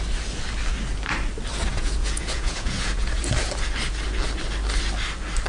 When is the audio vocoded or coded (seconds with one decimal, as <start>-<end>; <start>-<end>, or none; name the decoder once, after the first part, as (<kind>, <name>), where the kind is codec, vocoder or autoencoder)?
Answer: 1.7-3.2 (vocoder, Vocos)

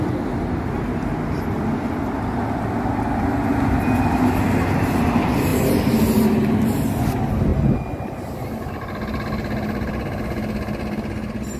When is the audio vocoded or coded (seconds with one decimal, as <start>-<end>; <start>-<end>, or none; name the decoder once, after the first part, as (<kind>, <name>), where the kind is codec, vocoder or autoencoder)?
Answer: none

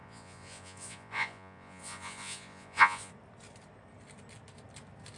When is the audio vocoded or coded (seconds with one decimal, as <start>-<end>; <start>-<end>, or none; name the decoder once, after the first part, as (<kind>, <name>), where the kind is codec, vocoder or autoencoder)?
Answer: 0.0-3.1 (vocoder, Vocos)

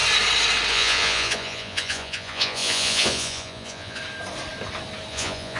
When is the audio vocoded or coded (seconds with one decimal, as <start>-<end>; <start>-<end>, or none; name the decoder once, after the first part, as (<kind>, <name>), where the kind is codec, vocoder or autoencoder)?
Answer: 0.7-4.0 (vocoder, Vocos); 5.1-5.6

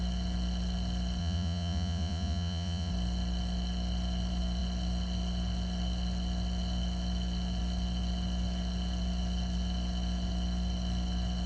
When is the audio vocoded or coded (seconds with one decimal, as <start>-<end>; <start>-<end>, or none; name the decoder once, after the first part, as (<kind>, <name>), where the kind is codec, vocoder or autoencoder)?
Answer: 1.2-2.9 (vocoder, Vocos)

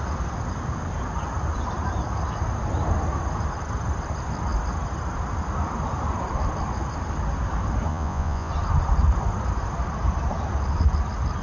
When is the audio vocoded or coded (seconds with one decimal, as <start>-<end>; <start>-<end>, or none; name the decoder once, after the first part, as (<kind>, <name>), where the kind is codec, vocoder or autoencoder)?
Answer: 7.9-8.5 (vocoder, Vocos)

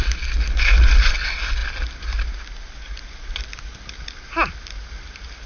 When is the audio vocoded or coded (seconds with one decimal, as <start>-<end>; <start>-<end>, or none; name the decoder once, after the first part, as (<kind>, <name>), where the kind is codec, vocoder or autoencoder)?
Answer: none